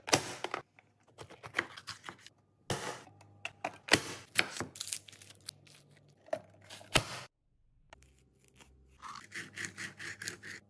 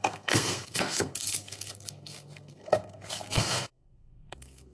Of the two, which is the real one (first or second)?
first